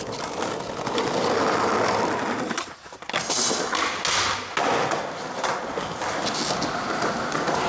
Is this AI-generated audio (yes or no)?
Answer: no